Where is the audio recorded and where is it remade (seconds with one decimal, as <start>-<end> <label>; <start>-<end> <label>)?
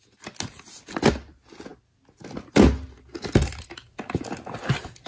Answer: 0.0-5.1 recorded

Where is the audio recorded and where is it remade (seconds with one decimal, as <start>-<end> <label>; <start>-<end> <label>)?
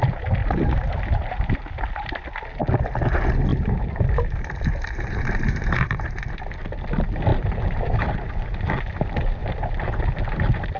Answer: 0.0-0.4 recorded; 0.4-2.2 remade; 2.2-3.5 recorded; 3.5-6.2 remade; 6.2-7.3 recorded; 7.3-8.3 remade; 8.3-9.4 recorded; 9.4-10.0 remade; 10.0-10.8 recorded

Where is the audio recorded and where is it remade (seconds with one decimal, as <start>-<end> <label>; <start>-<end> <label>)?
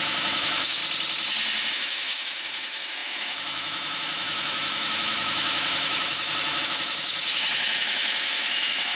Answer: 0.0-0.8 remade; 0.8-1.7 recorded; 1.7-9.0 remade